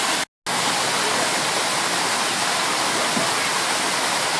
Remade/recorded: recorded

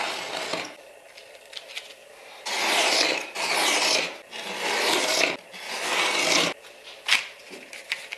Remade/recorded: recorded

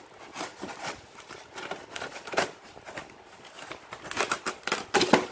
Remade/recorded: recorded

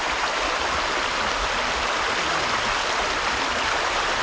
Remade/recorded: recorded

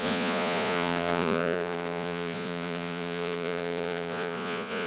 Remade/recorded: remade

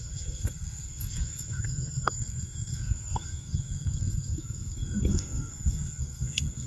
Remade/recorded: remade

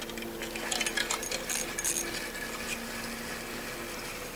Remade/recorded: recorded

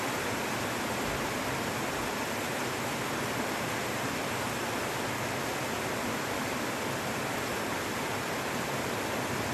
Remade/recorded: recorded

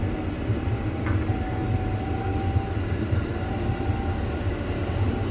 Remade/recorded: recorded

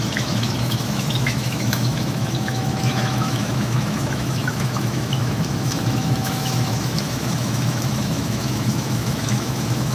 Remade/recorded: remade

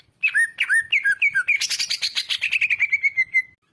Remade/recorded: recorded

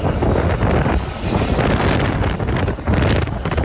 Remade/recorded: recorded